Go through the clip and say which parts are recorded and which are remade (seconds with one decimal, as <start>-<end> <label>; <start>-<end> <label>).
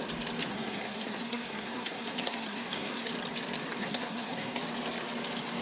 0.0-0.5 recorded; 0.5-3.1 remade; 3.1-3.8 recorded; 3.8-4.6 remade; 4.6-5.6 recorded